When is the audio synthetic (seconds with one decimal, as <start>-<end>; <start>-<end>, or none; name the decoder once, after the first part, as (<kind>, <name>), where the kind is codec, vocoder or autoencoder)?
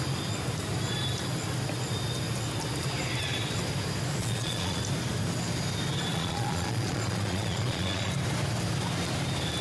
4.2-4.8 (vocoder, Vocos); 6.1-8.1